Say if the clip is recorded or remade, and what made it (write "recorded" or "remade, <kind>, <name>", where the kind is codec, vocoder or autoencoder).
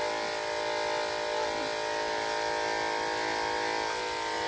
recorded